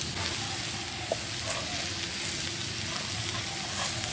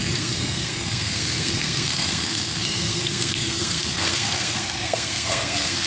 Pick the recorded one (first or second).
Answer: first